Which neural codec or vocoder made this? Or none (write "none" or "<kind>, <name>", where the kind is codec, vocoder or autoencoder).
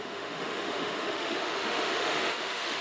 autoencoder, DAC-VAE